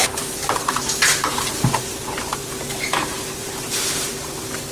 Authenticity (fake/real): fake